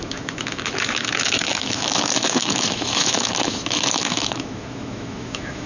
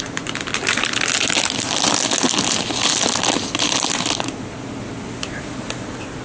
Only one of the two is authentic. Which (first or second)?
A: second